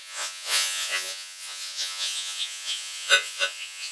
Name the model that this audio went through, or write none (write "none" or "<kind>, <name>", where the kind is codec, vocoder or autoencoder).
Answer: vocoder, Vocos